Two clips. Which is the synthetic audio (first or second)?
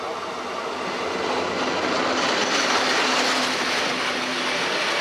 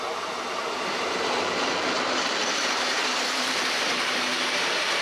second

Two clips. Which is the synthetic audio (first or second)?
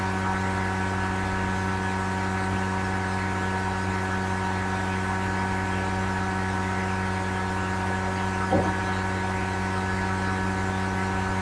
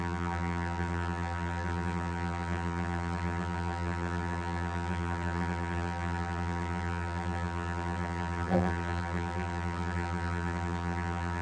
second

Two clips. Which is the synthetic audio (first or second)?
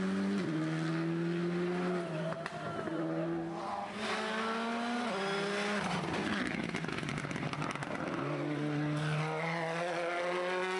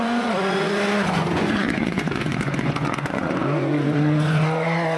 second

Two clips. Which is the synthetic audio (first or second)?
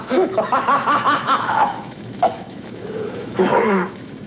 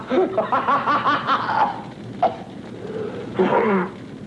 first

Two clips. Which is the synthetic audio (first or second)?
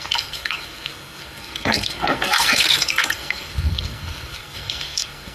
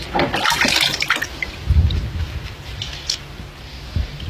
first